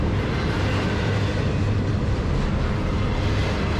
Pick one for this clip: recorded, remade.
recorded